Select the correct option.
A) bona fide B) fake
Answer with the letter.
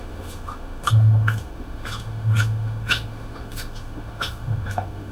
B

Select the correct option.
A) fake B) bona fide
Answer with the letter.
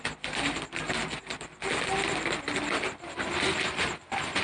A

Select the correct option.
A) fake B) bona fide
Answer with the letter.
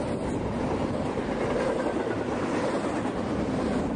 B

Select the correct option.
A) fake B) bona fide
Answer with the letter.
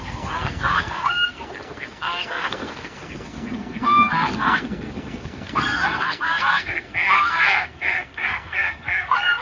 A